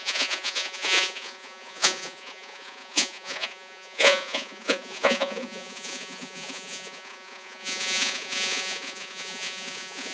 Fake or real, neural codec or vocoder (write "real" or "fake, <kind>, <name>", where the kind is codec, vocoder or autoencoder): fake, vocoder, Vocos